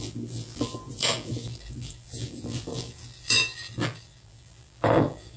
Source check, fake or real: fake